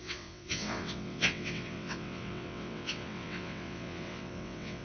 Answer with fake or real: fake